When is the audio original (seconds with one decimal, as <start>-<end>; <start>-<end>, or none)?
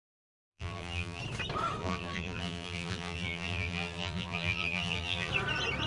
0.0-0.4; 1.2-1.8; 5.3-5.9